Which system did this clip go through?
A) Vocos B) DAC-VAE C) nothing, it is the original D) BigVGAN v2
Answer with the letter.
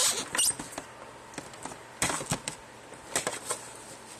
C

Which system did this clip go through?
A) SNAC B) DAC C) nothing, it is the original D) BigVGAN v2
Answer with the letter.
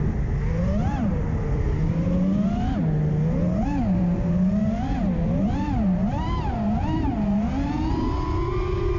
C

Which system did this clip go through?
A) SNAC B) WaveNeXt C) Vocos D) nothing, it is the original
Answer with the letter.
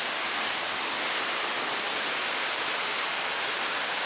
D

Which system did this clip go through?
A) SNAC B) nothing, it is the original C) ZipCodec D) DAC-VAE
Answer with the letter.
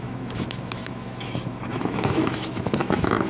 D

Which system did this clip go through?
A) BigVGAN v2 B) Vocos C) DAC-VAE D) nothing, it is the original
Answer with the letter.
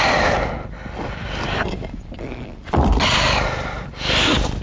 D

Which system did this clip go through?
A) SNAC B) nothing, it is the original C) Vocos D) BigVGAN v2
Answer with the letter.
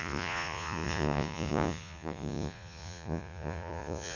C